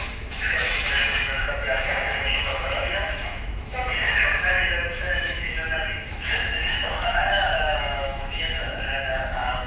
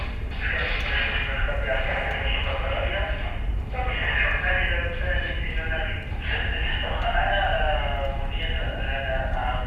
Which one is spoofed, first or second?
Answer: first